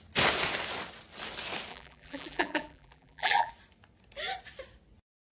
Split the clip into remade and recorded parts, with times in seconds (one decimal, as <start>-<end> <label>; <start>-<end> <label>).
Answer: 0.0-1.7 recorded; 1.7-3.5 remade; 3.5-5.3 recorded